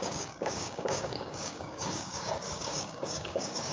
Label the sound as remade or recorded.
remade